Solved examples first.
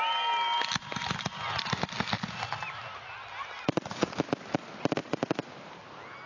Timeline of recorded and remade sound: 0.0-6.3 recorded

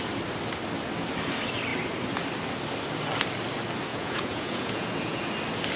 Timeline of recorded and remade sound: 0.0-3.9 recorded; 3.9-5.3 remade; 5.3-5.8 recorded

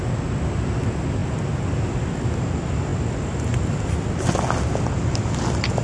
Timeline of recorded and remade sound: 0.0-5.8 recorded

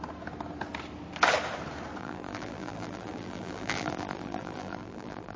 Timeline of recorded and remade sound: 0.0-2.0 recorded; 2.0-5.4 remade

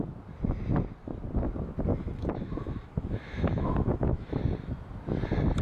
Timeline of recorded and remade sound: 0.0-1.9 recorded; 1.9-4.4 remade; 4.4-5.6 recorded

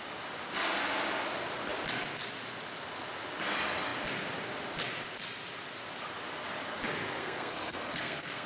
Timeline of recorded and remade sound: 0.0-7.2 recorded; 7.2-8.5 remade